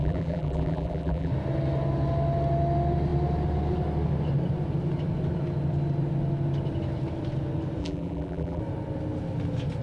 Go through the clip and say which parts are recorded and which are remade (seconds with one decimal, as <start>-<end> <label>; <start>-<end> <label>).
0.0-1.3 remade; 1.3-7.8 recorded; 7.8-8.6 remade; 8.6-9.8 recorded

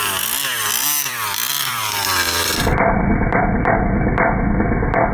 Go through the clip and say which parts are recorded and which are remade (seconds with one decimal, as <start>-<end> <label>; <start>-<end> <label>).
0.0-0.7 recorded; 0.7-3.8 remade; 3.8-5.1 recorded

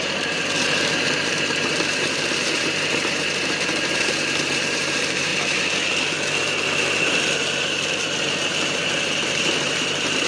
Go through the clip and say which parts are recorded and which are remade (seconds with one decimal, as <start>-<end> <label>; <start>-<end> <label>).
0.0-5.3 remade; 5.3-6.4 recorded; 6.4-10.3 remade